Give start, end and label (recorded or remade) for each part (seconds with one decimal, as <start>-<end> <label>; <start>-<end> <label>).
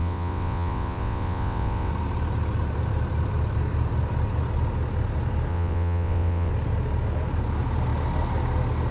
0.0-1.9 remade; 1.9-5.5 recorded; 5.5-6.5 remade; 6.5-8.9 recorded